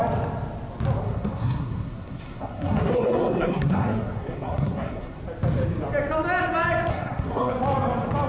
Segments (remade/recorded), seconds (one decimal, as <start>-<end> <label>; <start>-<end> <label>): 0.0-1.0 recorded; 1.0-5.2 remade; 5.2-6.9 recorded; 6.9-7.5 remade; 7.5-8.3 recorded